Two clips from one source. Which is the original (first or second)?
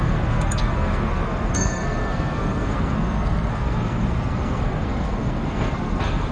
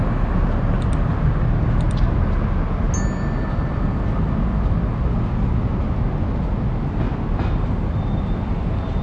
second